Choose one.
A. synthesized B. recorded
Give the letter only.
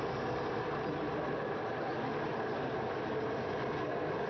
B